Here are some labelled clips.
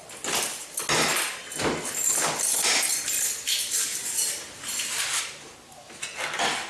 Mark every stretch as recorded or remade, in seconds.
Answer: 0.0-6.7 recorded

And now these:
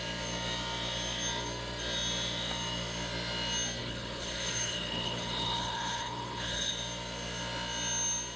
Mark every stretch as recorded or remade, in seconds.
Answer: 0.0-3.8 recorded; 3.8-6.7 remade; 6.7-8.4 recorded